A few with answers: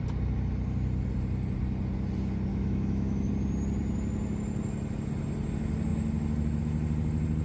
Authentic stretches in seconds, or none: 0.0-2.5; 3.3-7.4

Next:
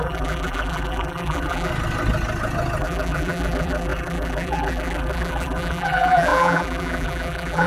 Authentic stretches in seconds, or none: 1.7-2.8

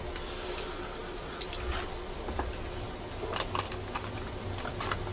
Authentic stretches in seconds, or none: 0.0-5.1